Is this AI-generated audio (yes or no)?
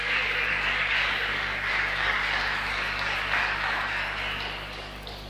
yes